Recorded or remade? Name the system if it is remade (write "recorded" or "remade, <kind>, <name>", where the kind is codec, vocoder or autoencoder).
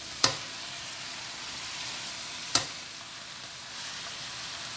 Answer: remade, vocoder, BigVGAN v2